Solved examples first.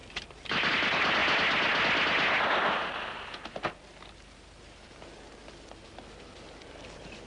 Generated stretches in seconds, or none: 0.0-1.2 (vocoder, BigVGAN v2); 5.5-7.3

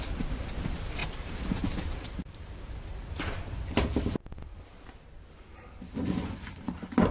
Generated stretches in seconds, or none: 1.0-3.1 (vocoder, BigVGAN v2)

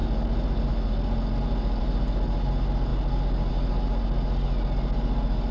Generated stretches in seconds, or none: none

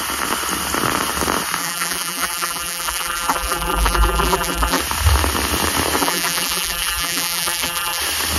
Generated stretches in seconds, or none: 1.6-4.8 (vocoder, BigVGAN v2); 6.0-8.0

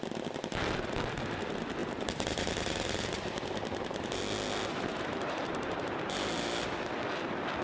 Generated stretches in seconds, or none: 1.8-4.2 (vocoder, BigVGAN v2); 4.7-5.9

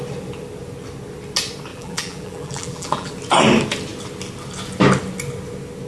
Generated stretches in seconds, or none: 1.7-3.1 (vocoder, BigVGAN v2)